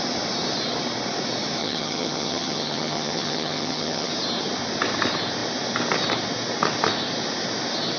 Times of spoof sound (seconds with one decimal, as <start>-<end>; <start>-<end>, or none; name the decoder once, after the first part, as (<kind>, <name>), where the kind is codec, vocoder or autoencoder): 1.6-4.1 (vocoder, HiFi-GAN)